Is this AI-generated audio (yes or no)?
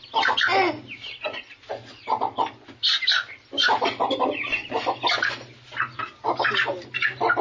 no